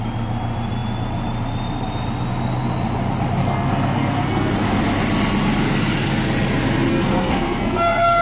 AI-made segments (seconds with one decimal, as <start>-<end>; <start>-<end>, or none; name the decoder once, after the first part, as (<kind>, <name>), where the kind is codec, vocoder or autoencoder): 3.4-4.5 (codec, SNAC); 6.9-8.2

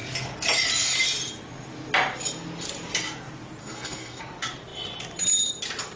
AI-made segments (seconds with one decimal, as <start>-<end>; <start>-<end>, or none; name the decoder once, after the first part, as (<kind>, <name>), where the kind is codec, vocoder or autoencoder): 3.6-4.2 (codec, SNAC)

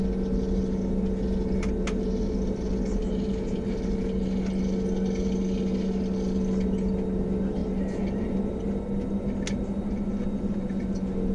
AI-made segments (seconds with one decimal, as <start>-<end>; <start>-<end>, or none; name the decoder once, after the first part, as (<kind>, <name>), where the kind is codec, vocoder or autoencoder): none

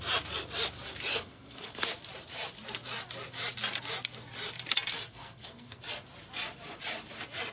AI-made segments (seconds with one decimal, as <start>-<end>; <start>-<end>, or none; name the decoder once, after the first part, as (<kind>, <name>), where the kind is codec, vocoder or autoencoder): 1.1-1.7 (codec, SNAC); 5.1-5.8

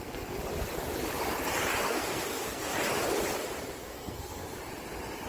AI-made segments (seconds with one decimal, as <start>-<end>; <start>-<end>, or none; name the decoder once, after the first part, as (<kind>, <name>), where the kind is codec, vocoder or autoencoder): 0.0-0.4 (codec, SNAC); 1.8-2.7; 3.8-4.4